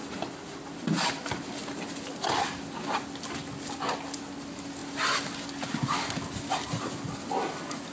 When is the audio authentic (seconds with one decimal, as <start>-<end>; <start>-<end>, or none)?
0.0-7.9

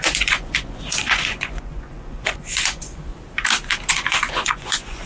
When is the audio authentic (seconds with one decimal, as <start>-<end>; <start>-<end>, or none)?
3.1-3.9

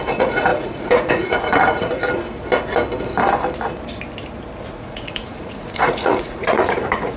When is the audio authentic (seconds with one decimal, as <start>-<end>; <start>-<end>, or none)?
2.0-4.7

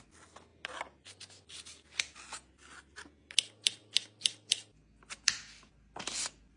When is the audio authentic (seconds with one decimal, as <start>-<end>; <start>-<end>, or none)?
0.0-6.6

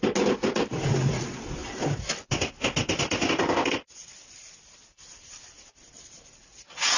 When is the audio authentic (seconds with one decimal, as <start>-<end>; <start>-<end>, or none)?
0.0-7.0

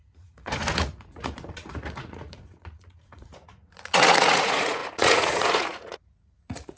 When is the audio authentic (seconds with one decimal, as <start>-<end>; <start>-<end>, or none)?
none

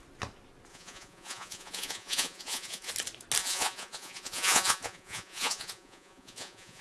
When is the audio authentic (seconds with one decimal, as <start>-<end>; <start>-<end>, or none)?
0.0-0.7; 2.9-3.4